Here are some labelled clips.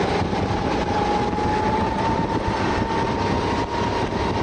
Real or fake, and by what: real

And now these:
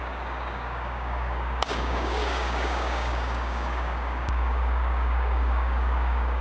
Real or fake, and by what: fake, codec, DAC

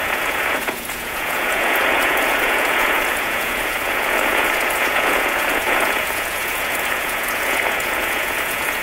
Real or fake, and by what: fake, vocoder, Vocos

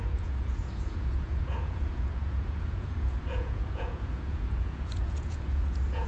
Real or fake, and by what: fake, vocoder, Vocos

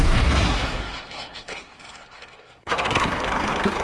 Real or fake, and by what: fake, codec, SNAC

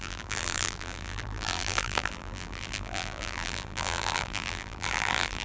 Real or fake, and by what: fake, vocoder, BigVGAN v2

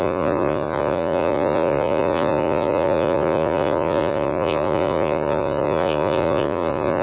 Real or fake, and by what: fake, vocoder, Vocos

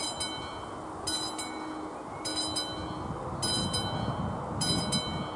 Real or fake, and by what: real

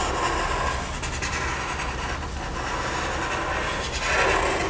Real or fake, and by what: real